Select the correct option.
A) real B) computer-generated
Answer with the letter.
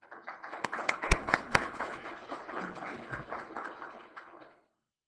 B